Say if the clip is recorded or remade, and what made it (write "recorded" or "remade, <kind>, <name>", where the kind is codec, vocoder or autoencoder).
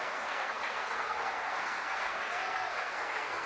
remade, codec, SNAC